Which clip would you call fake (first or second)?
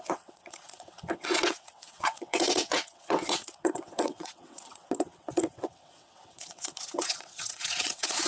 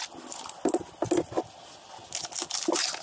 first